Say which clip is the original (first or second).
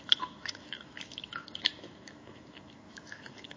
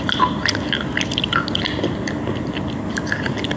second